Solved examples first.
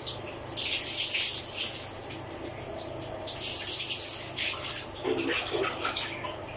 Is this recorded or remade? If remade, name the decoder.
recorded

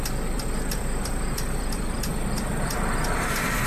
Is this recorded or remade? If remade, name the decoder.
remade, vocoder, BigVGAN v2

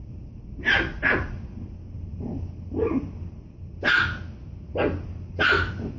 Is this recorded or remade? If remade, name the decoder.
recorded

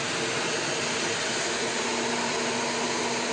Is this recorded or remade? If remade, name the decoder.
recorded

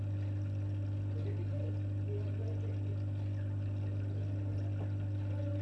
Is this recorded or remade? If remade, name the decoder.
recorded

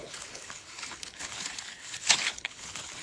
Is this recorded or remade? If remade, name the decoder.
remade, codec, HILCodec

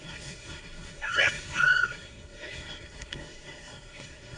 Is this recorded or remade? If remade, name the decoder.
remade, codec, SNAC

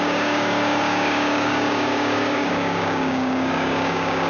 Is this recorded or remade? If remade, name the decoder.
remade, codec, DAC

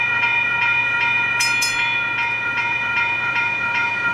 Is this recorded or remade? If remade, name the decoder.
remade, vocoder, Vocos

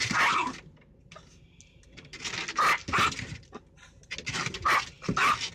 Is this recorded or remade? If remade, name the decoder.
recorded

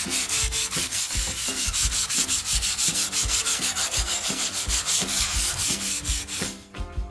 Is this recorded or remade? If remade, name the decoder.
remade, codec, SNAC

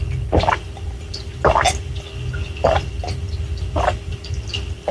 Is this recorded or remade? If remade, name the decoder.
recorded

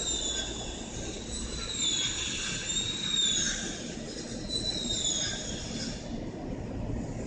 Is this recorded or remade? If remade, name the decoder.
recorded